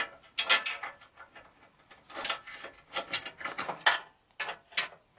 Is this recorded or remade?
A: recorded